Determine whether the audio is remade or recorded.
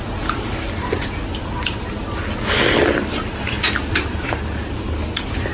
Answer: recorded